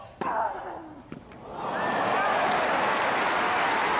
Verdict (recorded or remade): recorded